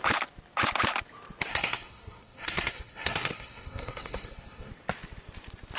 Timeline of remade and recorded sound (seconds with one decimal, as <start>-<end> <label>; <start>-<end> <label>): 0.0-1.5 recorded; 1.5-4.7 remade; 4.7-5.8 recorded